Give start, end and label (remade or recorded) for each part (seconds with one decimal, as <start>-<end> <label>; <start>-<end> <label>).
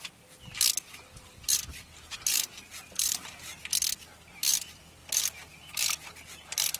0.0-1.7 recorded; 1.7-3.6 remade; 3.6-5.0 recorded; 5.0-6.8 remade